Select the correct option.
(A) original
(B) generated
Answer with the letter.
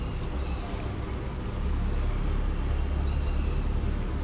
A